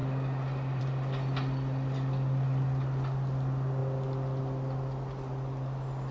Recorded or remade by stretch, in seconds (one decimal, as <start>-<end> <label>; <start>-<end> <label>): 0.0-6.1 recorded